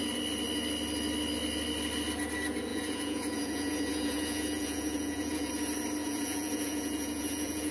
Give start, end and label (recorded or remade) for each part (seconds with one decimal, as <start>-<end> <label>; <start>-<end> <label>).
0.0-2.7 recorded; 2.7-5.5 remade; 5.5-6.0 recorded; 6.0-7.7 remade